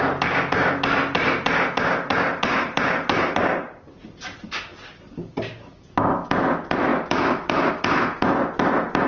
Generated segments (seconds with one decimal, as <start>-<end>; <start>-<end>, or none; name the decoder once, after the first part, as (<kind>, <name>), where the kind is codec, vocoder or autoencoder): none